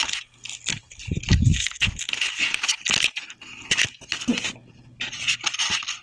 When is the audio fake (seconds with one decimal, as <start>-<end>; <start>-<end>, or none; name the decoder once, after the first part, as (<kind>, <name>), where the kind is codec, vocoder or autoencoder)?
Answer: none